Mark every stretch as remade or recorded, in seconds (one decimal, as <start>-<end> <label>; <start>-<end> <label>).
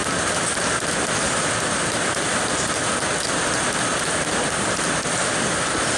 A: 0.0-6.0 recorded